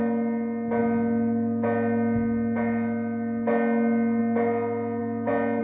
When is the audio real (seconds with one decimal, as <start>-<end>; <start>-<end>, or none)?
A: 0.0-5.6